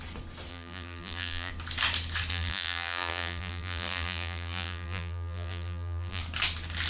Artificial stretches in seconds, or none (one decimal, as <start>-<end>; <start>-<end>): 0.5-1.5; 2.3-6.2